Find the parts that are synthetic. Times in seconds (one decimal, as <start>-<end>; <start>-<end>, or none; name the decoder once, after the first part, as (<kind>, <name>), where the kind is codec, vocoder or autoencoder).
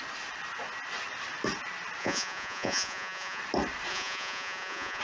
2.0-3.4 (vocoder, Vocos); 3.9-5.0